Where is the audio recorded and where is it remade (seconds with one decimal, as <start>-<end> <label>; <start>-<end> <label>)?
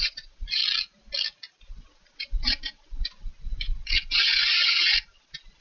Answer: 0.0-0.6 remade; 0.6-1.6 recorded; 1.6-5.6 remade